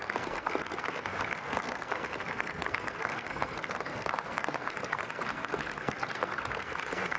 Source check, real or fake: fake